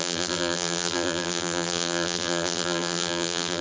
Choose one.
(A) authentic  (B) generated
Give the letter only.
B